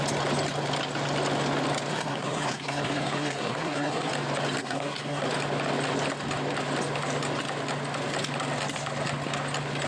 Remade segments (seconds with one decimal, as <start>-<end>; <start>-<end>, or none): 1.9-4.1; 4.6-5.2